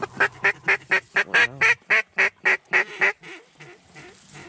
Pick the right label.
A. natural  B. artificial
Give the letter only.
A